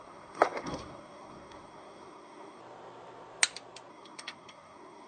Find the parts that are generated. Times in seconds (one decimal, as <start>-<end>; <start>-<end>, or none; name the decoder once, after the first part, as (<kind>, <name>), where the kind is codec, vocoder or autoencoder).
0.0-2.6 (codec, SNAC); 3.9-5.1